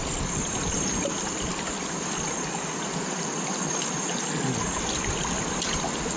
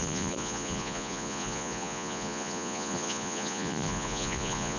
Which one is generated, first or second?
second